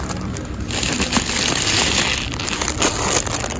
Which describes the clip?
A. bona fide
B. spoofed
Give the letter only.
A